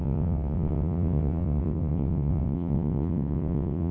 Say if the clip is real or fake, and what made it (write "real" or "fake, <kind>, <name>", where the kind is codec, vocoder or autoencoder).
fake, vocoder, WaveNeXt